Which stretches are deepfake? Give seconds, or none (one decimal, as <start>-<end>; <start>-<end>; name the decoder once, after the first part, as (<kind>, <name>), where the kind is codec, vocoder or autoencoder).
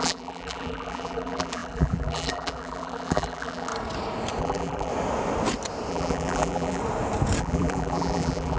0.0-3.7 (vocoder, BigVGAN v2); 4.4-4.9; 5.9-6.8; 7.4-8.6